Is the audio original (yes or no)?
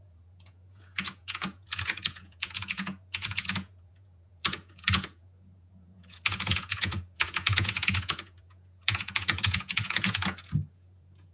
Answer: no